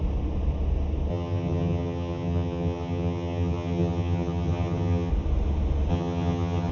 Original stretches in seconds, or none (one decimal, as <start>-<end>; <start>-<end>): 0.0-1.1; 5.1-5.9

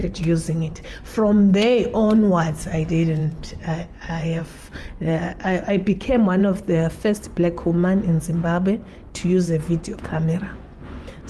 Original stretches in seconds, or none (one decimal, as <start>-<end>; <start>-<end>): none

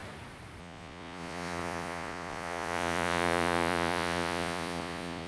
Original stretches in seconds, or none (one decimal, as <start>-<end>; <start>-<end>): 0.0-0.6

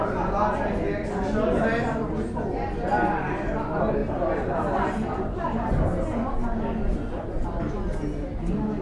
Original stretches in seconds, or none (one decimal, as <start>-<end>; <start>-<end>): 0.0-4.0; 5.7-8.8